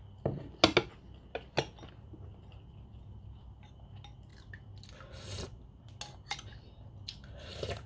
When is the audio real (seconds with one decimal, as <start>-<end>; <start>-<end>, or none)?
0.0-7.9